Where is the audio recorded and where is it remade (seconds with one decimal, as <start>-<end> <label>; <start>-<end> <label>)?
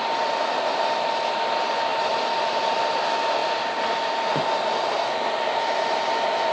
0.0-1.9 recorded; 1.9-2.7 remade; 2.7-6.5 recorded